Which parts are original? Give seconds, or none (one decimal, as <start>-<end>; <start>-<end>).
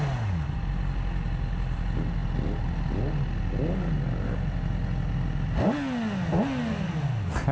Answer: 0.0-7.5